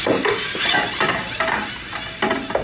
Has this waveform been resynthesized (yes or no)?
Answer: no